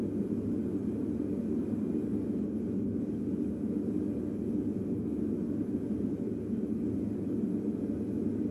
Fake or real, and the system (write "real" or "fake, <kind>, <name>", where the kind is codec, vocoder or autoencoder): real